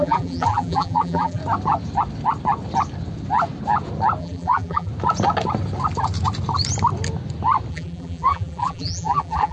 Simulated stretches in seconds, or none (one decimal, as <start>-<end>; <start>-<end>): 0.0-1.4; 4.2-4.9; 7.7-9.5